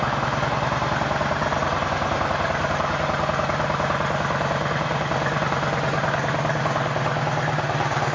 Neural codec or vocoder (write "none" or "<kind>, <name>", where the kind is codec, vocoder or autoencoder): none